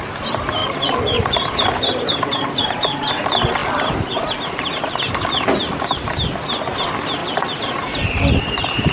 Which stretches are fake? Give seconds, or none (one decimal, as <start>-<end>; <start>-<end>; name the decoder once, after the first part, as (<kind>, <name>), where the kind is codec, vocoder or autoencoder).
0.6-3.1 (vocoder, BigVGAN v2); 3.6-5.5